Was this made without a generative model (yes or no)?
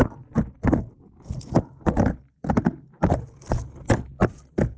yes